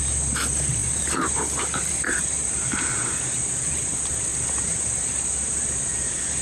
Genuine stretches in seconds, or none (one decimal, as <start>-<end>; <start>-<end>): 0.0-0.8; 3.7-4.3